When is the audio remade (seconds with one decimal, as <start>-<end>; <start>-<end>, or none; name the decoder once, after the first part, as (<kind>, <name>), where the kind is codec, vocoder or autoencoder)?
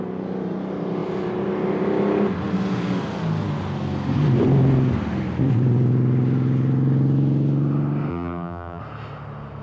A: 8.1-8.8 (vocoder, BigVGAN v2)